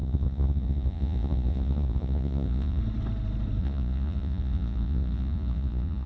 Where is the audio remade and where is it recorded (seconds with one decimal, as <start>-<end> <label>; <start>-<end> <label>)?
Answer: 0.0-2.8 remade; 2.8-3.6 recorded; 3.6-6.1 remade